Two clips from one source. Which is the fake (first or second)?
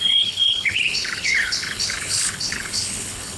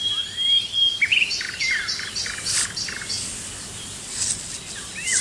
first